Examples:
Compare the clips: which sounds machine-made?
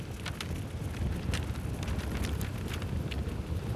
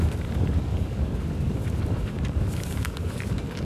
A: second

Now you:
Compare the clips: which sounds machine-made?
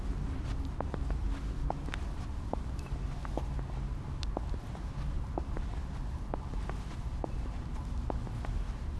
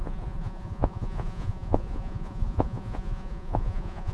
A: second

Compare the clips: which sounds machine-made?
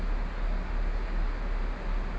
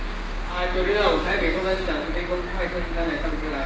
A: second